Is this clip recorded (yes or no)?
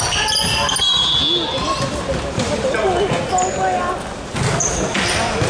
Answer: yes